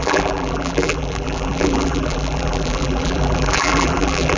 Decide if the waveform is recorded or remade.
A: remade